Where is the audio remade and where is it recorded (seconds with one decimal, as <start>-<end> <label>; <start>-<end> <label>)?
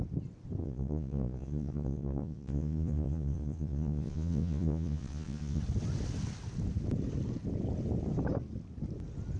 0.0-0.6 recorded; 0.6-5.6 remade; 5.6-9.4 recorded